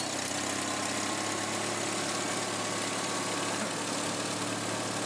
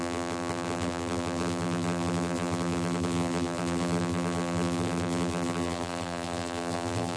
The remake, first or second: second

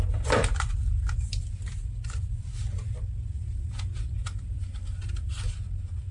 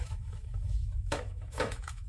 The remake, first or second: second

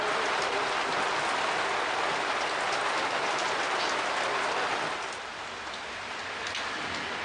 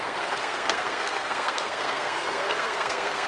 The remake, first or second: second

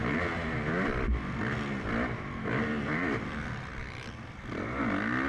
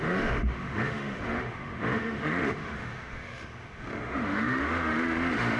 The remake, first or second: second